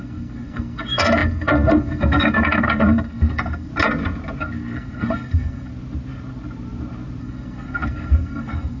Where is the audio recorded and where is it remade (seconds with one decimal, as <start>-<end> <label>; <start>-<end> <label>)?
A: 0.0-3.7 remade; 3.7-4.4 recorded; 4.4-5.7 remade; 5.7-7.2 recorded; 7.2-8.8 remade